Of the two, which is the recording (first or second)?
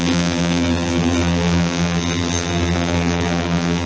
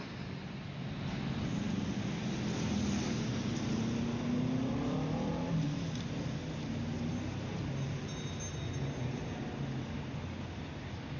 second